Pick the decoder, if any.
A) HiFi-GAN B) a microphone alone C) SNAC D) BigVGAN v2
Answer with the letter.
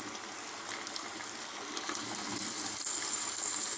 B